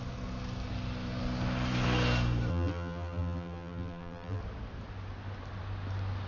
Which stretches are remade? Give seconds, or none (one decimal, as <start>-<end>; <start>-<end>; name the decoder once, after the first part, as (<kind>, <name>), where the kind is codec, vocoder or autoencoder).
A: 2.5-4.4 (vocoder, BigVGAN v2)